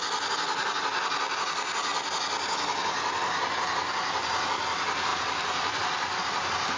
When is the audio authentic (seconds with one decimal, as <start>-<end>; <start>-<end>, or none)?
0.0-5.1; 6.2-6.8

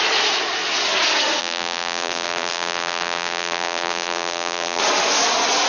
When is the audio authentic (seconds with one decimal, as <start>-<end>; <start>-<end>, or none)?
0.0-1.4; 4.8-5.7

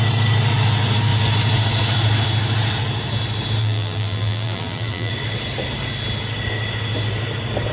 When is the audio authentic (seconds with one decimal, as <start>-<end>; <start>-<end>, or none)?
0.0-3.6; 5.1-7.7

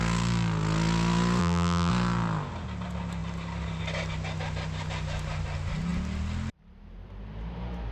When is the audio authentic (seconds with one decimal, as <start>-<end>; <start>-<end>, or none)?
0.0-1.4; 1.9-7.9

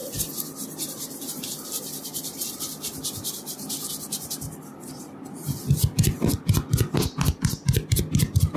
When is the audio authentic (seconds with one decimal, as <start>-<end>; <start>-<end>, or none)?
2.6-4.7; 6.4-8.6